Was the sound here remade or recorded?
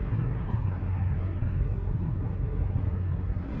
remade